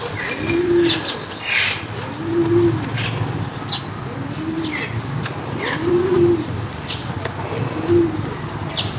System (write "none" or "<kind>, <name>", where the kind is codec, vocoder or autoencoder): none